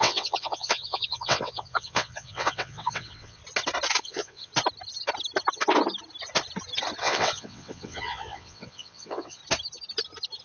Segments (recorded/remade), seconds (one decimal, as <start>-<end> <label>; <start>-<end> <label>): 0.0-3.4 remade; 3.4-4.0 recorded; 4.0-4.5 remade; 4.5-7.0 recorded; 7.0-9.4 remade; 9.4-10.4 recorded